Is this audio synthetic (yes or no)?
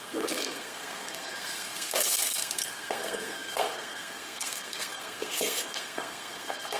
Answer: yes